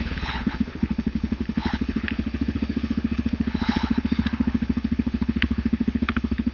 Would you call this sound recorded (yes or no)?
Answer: no